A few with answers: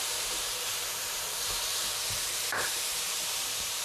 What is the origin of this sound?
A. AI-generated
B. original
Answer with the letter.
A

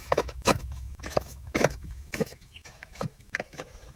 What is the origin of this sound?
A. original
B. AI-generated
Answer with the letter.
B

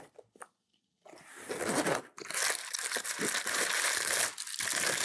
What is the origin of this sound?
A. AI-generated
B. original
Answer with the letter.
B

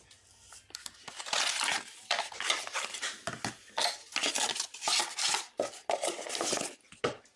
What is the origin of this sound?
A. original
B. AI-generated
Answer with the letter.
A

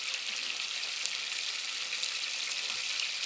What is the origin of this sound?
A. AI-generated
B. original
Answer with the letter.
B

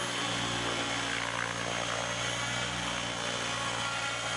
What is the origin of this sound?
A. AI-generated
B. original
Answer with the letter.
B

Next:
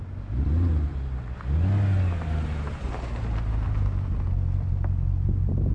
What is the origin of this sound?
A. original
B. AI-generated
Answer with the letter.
A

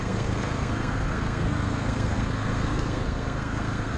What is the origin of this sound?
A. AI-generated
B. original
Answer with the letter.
A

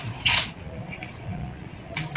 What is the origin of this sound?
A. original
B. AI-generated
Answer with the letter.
B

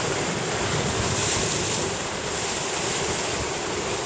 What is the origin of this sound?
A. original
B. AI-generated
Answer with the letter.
B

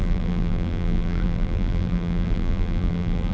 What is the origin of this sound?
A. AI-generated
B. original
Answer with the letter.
A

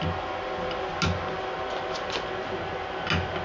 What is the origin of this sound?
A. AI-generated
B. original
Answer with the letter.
B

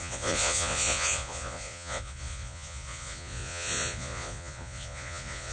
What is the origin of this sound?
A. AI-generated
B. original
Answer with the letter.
A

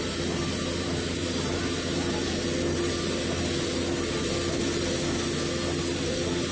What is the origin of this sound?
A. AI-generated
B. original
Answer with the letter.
B